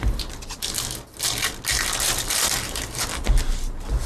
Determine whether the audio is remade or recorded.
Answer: recorded